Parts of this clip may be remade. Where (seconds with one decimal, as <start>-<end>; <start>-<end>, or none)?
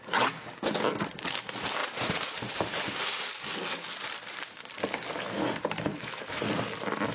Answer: 1.8-2.8; 5.9-6.5